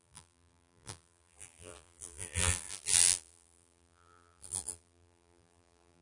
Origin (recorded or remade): remade